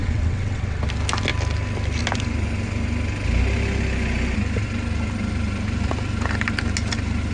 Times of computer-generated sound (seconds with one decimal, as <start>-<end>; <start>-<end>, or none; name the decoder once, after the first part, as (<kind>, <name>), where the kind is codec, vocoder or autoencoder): 0.0-0.8 (vocoder, WaveNeXt)